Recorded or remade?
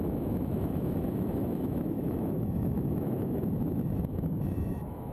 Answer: remade